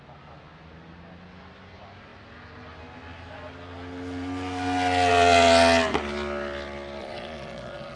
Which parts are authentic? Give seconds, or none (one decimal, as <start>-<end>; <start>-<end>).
0.0-7.0